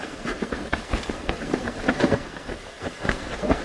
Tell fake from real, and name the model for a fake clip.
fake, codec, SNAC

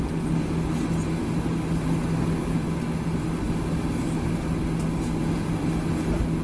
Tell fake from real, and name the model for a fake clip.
real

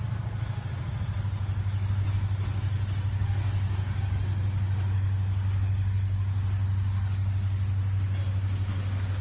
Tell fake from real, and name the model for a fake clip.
real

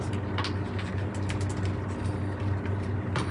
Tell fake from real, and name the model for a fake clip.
real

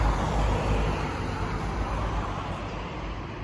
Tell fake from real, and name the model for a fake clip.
real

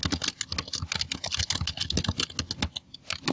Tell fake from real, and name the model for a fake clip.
real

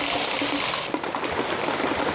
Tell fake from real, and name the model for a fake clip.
real